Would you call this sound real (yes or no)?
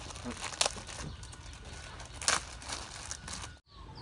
yes